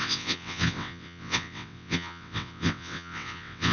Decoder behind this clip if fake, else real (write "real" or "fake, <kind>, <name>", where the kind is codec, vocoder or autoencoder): fake, vocoder, WaveNeXt